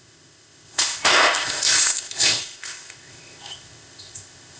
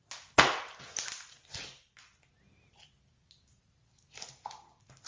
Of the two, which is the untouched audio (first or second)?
second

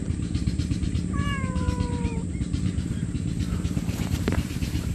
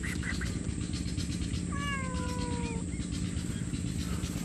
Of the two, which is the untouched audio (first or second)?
second